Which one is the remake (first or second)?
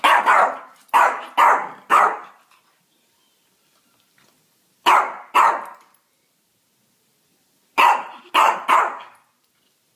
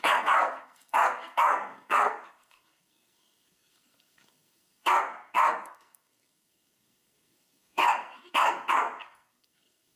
second